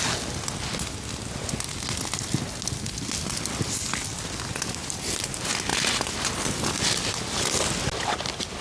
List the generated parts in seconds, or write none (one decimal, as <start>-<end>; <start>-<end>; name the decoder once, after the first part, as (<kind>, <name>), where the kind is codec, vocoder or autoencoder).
none